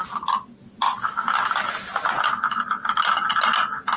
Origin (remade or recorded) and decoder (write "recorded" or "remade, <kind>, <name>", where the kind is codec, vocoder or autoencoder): recorded